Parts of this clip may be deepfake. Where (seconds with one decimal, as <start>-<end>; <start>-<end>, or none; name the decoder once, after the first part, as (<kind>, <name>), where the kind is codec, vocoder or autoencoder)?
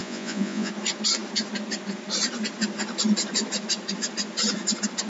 0.0-0.7 (vocoder, Vocos)